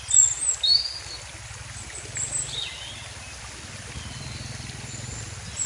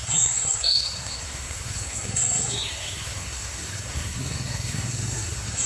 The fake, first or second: second